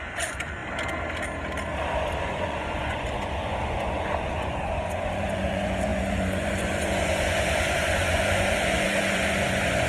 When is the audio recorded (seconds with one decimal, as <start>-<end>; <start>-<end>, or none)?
0.6-2.2